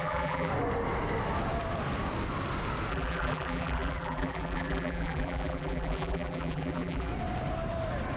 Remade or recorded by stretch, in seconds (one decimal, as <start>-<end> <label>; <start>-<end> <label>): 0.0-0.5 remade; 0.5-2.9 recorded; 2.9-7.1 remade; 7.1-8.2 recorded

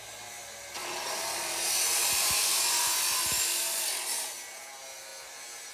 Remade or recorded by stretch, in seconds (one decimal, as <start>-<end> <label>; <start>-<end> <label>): 0.0-5.7 recorded

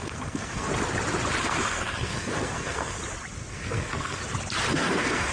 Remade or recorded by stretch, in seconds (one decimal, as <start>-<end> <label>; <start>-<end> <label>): 0.0-0.7 remade; 0.7-1.4 recorded; 1.4-3.0 remade; 3.0-3.5 recorded; 3.5-4.2 remade; 4.2-4.7 recorded; 4.7-5.3 remade

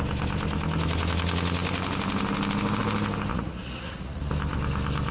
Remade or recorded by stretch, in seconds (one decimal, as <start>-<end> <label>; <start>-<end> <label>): 0.0-3.3 recorded; 3.3-4.3 remade; 4.3-5.1 recorded

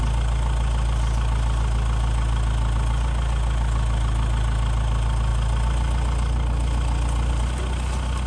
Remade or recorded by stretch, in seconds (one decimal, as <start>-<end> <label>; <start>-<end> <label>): 0.0-8.3 recorded

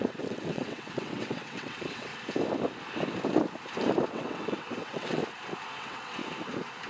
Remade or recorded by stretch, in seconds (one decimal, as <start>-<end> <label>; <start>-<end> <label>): 0.0-2.1 remade; 2.1-4.1 recorded; 4.1-5.2 remade; 5.2-5.8 recorded; 5.8-6.2 remade; 6.2-6.9 recorded

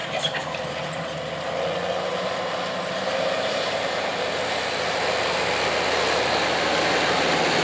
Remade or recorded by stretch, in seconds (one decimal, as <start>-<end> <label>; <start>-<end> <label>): 0.0-0.6 remade; 0.6-7.6 recorded

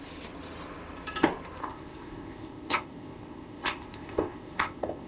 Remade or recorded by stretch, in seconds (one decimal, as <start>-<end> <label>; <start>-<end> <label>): 0.0-1.6 recorded; 1.6-5.1 remade